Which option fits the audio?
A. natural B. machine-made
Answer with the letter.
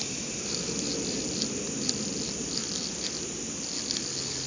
A